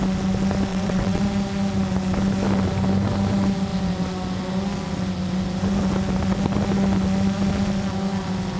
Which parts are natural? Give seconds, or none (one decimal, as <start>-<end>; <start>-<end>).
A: 0.0-0.7; 1.2-8.6